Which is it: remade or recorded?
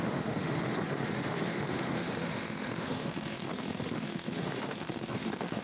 remade